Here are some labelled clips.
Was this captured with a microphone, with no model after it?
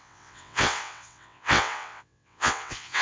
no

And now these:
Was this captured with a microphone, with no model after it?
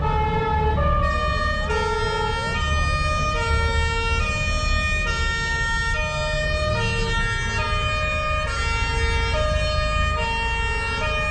yes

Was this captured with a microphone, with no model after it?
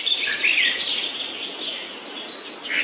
yes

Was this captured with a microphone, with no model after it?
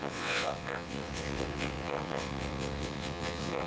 no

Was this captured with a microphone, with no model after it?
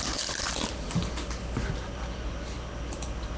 yes